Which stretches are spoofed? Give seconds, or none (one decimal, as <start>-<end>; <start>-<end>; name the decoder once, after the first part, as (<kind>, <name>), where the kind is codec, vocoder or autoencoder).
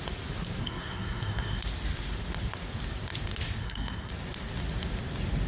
0.6-1.6 (codec, SNAC); 3.6-4.1